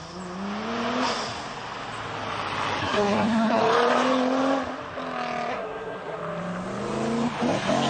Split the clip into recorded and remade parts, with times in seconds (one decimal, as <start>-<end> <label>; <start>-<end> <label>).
0.0-2.8 recorded; 2.8-3.6 remade; 3.6-5.5 recorded; 5.5-6.2 remade; 6.2-7.9 recorded